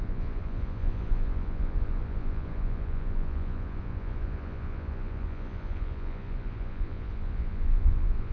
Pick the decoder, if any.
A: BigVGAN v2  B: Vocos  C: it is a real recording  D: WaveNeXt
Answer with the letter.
B